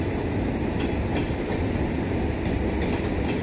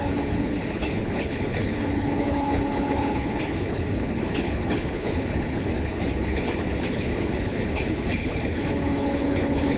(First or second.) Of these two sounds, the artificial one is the second